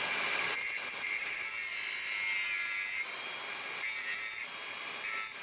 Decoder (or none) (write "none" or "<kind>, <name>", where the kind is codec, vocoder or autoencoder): none